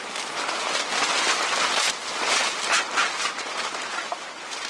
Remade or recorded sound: recorded